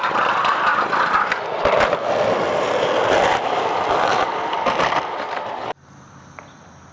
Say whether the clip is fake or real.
real